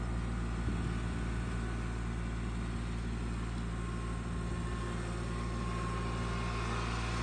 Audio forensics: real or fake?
real